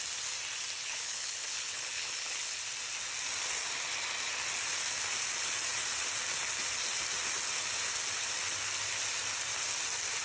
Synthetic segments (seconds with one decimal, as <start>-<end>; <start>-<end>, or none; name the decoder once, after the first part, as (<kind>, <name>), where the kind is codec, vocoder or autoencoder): 0.8-2.6 (codec, HILCodec)